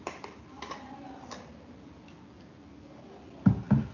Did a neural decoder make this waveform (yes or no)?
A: no